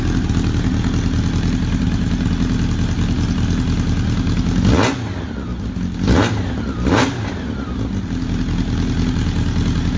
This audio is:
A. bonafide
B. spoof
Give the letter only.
A